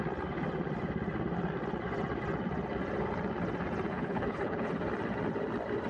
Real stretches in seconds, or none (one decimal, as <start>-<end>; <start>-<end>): 0.0-3.9; 4.7-5.9